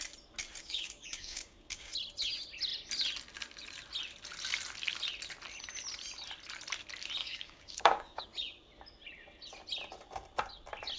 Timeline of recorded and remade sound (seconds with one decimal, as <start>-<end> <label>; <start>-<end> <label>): 0.0-0.6 recorded; 0.6-1.9 remade; 1.9-7.2 recorded; 7.2-8.2 remade; 8.2-11.0 recorded